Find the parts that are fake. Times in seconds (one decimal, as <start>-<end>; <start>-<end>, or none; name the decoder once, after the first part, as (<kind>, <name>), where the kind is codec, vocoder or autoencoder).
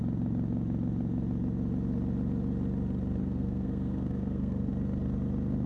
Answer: 3.2-4.7 (codec, SNAC)